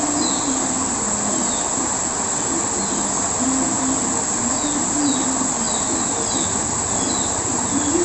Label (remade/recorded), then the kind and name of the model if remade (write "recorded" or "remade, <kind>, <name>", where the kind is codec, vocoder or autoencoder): recorded